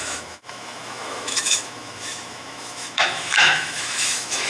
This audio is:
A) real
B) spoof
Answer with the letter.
B